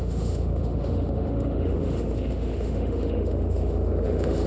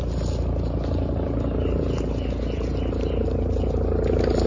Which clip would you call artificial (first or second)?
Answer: first